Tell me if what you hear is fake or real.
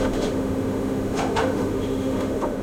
fake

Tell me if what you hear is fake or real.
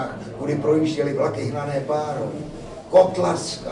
real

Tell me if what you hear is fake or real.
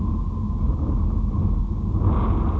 real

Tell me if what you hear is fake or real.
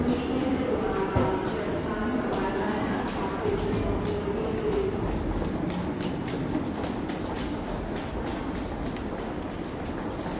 real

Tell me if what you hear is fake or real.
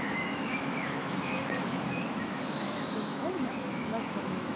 fake